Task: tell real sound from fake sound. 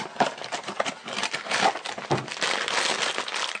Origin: real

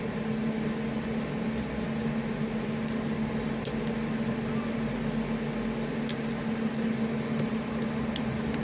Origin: real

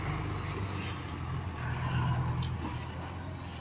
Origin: real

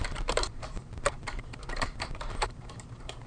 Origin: fake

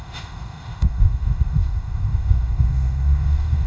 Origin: fake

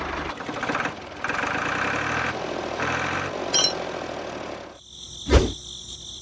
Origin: fake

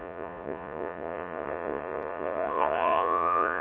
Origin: fake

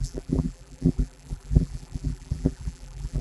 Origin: fake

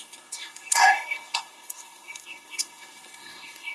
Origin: fake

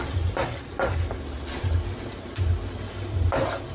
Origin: real